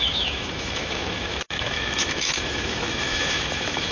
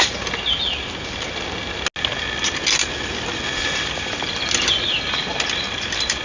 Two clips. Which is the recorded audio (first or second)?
second